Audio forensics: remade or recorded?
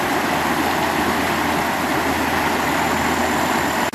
recorded